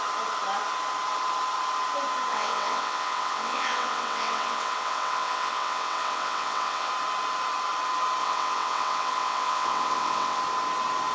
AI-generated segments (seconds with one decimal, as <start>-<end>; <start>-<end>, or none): 2.3-6.9; 8.2-10.4